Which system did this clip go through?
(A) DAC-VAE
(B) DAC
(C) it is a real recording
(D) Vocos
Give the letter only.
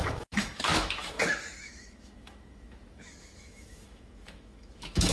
A